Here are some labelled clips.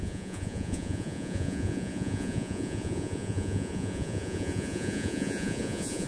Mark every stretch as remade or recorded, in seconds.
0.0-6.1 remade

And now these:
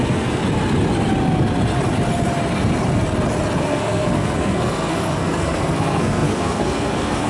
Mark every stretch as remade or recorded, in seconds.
0.0-0.4 remade; 0.4-3.6 recorded; 3.6-7.3 remade

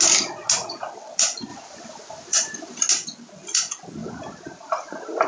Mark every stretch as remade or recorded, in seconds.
0.0-1.5 recorded; 1.5-2.9 remade; 2.9-4.0 recorded; 4.0-5.3 remade

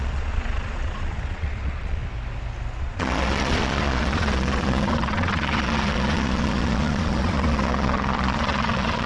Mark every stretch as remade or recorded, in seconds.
0.0-2.0 remade; 2.0-2.8 recorded; 2.8-9.1 remade

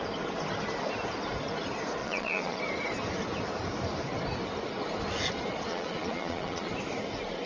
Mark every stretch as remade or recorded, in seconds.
0.0-2.0 recorded; 2.0-2.6 remade; 2.6-5.7 recorded; 5.7-6.7 remade; 6.7-7.5 recorded

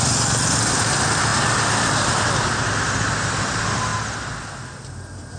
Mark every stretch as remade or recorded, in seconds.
0.0-5.4 recorded

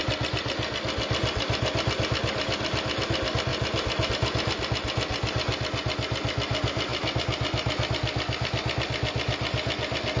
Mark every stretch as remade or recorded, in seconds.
0.0-10.2 recorded